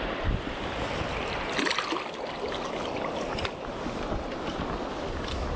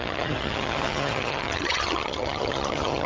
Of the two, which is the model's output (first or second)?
second